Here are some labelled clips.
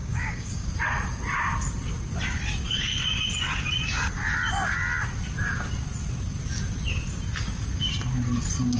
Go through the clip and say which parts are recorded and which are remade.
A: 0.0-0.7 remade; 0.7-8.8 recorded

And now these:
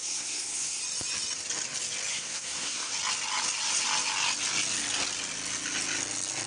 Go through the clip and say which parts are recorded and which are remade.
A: 0.0-0.8 remade; 0.8-2.1 recorded; 2.1-2.9 remade; 2.9-6.5 recorded

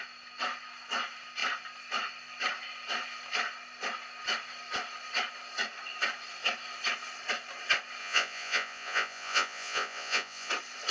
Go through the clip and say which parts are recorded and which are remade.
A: 0.0-8.0 recorded; 8.0-10.5 remade; 10.5-10.9 recorded

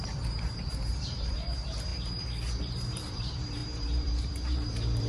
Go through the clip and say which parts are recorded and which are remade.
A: 0.0-5.1 remade

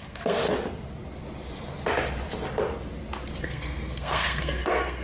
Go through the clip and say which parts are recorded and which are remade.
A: 0.0-0.4 remade; 0.4-3.4 recorded; 3.4-5.0 remade

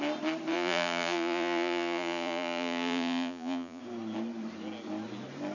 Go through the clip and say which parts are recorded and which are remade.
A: 0.0-0.5 recorded; 0.5-3.8 remade; 3.8-5.5 recorded

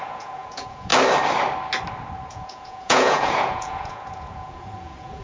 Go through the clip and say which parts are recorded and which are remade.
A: 0.0-0.9 remade; 0.9-2.3 recorded; 2.3-5.2 remade

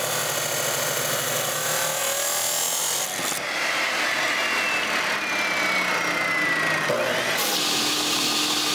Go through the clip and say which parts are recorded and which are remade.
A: 0.0-8.7 recorded